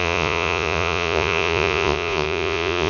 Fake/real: fake